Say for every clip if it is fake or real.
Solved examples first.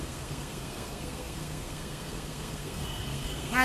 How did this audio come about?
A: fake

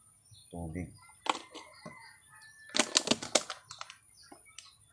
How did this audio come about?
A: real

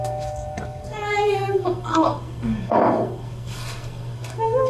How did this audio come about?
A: fake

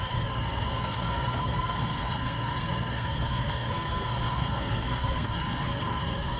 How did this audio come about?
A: fake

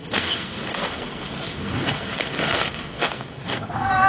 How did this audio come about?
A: fake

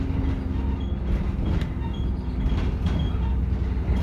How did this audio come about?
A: real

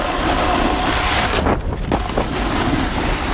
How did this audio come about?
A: real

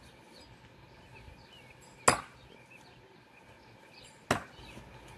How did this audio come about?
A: real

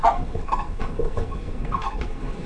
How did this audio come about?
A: fake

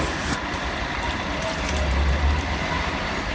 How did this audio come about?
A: real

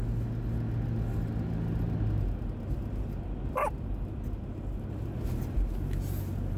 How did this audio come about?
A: real